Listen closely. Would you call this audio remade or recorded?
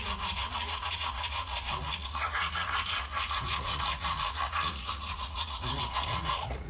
remade